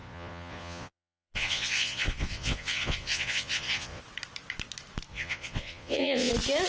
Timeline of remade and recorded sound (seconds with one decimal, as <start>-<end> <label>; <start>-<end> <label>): 0.0-4.0 remade; 4.0-5.1 recorded; 5.1-6.3 remade; 6.3-6.7 recorded